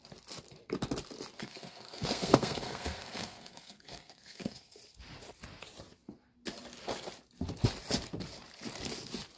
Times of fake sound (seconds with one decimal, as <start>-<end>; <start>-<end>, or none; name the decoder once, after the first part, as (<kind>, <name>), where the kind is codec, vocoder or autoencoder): 1.4-4.8 (codec, SNAC)